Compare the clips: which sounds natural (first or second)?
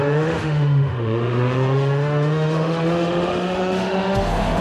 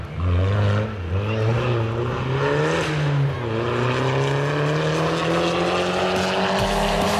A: second